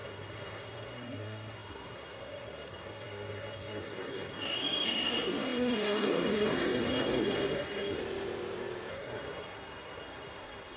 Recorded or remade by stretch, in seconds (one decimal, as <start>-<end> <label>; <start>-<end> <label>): 0.0-8.0 remade; 8.0-8.9 recorded; 8.9-10.8 remade